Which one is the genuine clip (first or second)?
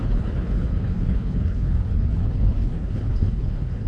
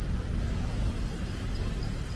second